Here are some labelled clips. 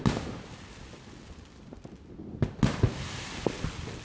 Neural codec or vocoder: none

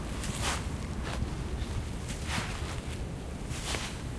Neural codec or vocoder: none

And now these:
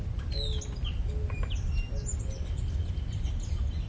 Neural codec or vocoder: none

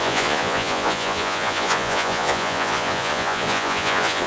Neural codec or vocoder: vocoder, Vocos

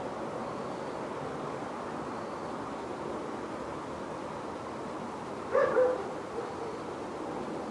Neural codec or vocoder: none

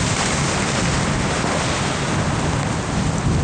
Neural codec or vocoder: none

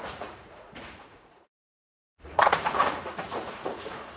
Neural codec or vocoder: vocoder, Vocos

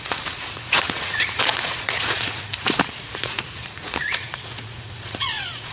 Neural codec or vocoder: vocoder, Vocos